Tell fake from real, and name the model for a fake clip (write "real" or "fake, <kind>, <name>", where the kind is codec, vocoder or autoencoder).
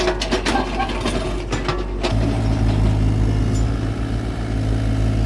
real